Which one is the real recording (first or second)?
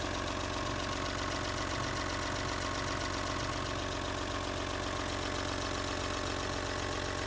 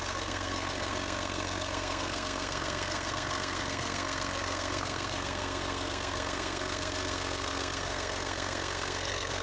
first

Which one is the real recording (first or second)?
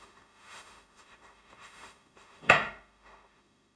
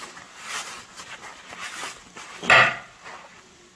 second